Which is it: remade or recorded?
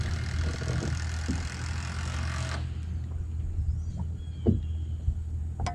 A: recorded